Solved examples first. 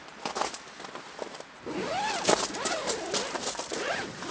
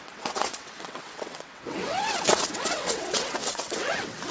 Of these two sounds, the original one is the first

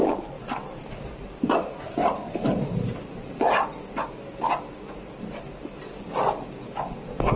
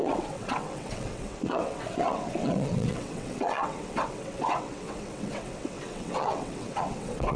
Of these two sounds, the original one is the first